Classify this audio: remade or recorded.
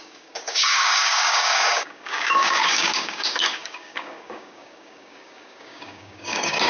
remade